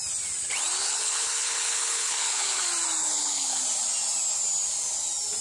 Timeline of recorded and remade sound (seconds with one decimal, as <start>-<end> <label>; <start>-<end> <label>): 0.0-0.8 recorded; 0.8-2.6 remade; 2.6-3.0 recorded; 3.0-3.6 remade; 3.6-5.4 recorded